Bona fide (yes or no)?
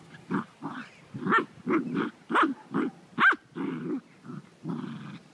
yes